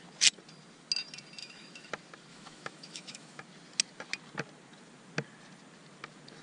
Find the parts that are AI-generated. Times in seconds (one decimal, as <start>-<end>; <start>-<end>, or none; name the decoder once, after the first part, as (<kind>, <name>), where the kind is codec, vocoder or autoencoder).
1.4-1.9 (autoencoder, DAC-VAE); 2.3-3.4